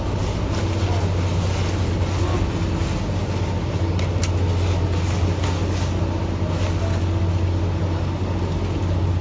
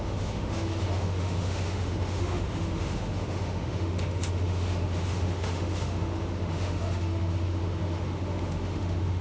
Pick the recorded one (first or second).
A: first